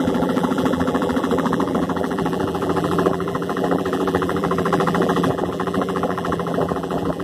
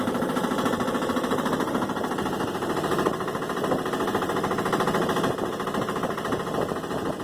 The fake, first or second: first